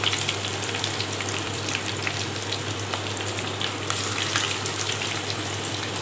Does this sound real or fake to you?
fake